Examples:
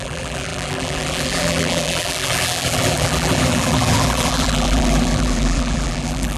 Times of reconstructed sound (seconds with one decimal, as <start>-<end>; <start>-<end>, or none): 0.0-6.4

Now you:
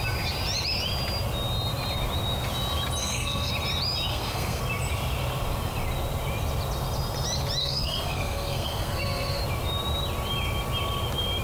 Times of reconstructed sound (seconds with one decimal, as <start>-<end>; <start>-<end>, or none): 3.0-3.5; 4.1-4.6; 7.6-9.4

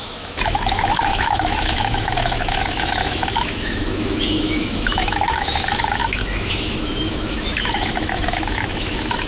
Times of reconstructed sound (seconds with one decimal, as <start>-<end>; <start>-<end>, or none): 0.0-9.3

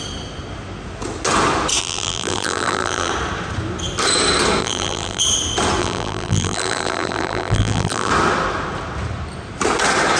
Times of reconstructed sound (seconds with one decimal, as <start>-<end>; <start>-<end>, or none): 1.8-3.1; 4.6-5.2; 5.8-8.1

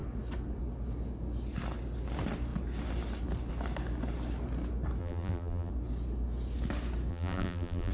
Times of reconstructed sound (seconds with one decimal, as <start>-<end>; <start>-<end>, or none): 5.0-5.7; 7.1-7.9